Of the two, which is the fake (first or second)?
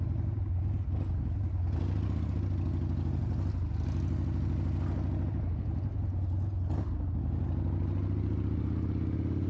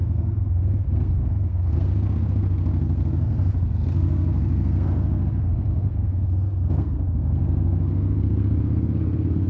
second